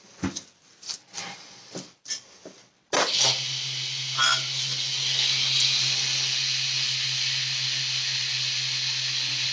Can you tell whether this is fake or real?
real